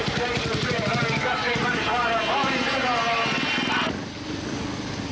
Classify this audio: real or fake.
real